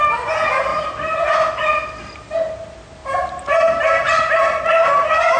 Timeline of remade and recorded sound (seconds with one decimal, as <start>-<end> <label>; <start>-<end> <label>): 0.0-3.0 recorded; 3.0-4.6 remade; 4.6-5.4 recorded